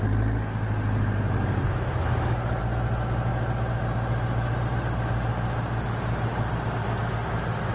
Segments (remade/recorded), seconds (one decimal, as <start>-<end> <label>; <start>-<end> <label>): 0.0-2.0 recorded; 2.0-2.6 remade; 2.6-7.7 recorded